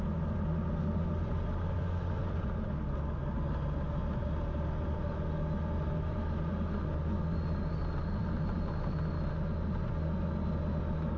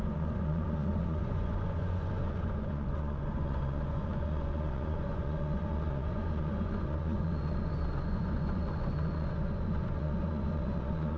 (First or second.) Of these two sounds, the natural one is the first